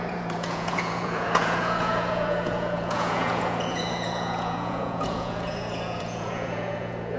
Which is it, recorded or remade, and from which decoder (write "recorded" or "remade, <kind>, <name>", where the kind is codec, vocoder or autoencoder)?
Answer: remade, vocoder, Vocos